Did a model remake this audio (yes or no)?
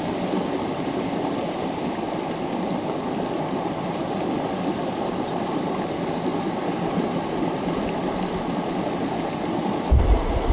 no